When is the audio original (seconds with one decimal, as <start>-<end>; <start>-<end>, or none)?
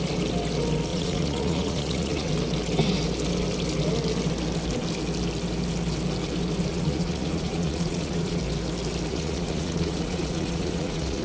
0.0-0.9; 2.3-6.7; 8.4-9.1